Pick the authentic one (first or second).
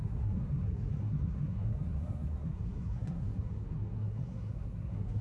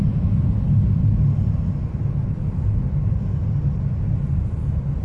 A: second